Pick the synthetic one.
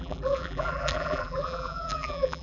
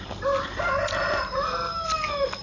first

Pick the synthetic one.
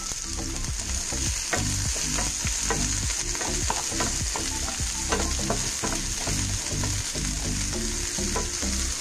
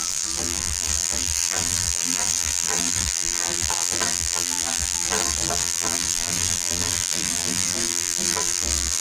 second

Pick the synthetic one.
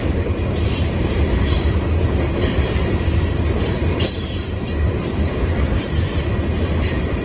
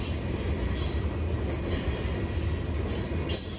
first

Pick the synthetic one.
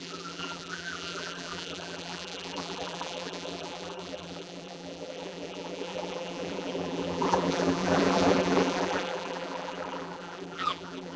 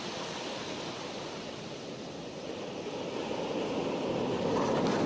first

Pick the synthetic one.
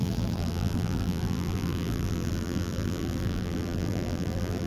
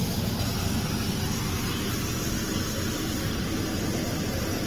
first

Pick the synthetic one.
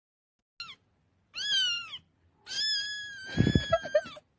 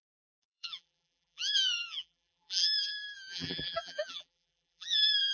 second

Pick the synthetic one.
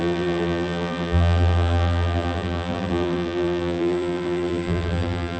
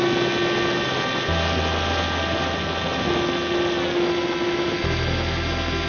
first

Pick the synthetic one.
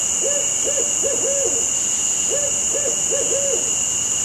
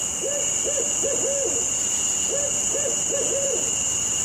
second